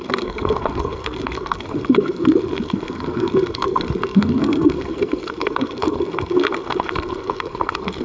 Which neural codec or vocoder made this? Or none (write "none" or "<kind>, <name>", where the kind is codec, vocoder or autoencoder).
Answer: codec, SNAC